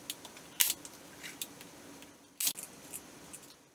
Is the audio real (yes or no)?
yes